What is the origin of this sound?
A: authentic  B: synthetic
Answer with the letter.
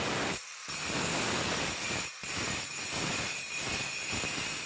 A